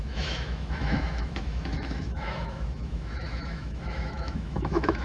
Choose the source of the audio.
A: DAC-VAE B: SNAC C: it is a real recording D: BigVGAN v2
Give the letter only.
A